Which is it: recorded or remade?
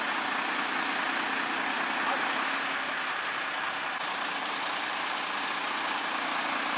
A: recorded